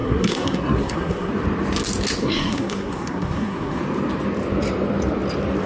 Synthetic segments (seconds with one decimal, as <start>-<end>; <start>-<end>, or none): 0.0-1.3; 2.2-3.8